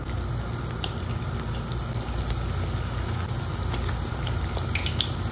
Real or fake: real